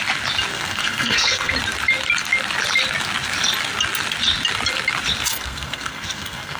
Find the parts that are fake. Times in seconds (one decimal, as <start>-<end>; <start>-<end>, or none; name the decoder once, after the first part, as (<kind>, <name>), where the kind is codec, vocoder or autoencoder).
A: 0.5-1.5 (codec, SNAC); 5.3-6.6